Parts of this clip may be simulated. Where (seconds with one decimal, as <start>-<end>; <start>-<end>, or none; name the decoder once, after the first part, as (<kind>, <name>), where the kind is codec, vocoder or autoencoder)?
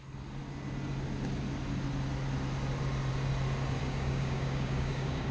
3.8-5.3 (codec, DAC)